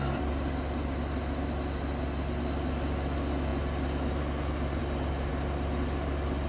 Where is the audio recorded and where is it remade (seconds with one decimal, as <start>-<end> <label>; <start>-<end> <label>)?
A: 0.0-6.5 recorded